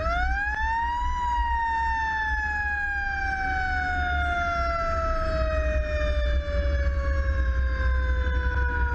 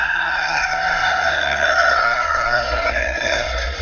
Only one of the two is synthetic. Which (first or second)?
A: second